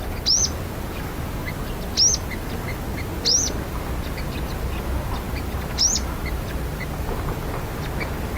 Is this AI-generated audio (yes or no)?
no